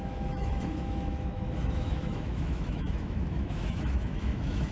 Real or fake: fake